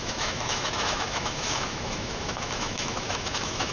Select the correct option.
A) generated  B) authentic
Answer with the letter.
A